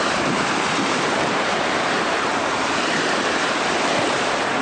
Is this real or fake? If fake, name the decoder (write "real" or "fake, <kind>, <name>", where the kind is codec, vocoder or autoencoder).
fake, vocoder, BigVGAN v2